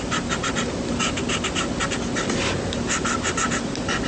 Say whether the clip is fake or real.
real